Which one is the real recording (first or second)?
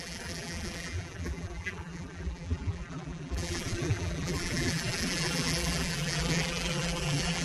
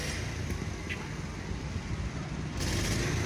second